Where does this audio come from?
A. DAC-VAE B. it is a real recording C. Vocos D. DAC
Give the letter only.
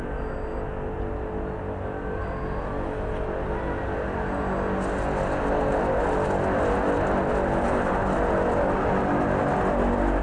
B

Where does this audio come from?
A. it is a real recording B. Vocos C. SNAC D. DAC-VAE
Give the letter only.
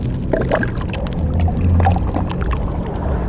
A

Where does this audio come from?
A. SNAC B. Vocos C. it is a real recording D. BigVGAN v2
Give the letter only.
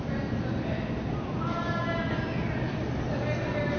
C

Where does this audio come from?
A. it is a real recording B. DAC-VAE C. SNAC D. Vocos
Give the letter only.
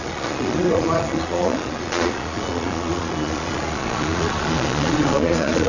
D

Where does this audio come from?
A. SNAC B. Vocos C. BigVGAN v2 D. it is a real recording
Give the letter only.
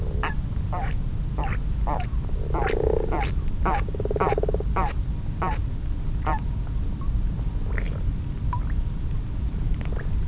D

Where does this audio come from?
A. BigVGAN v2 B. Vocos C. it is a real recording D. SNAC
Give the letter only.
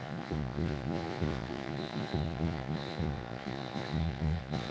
B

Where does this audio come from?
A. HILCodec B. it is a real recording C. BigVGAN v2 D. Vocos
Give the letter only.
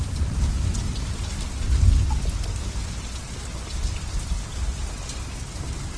B